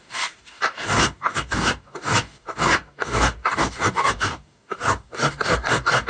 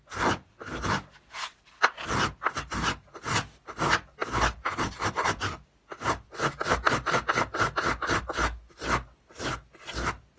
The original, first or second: second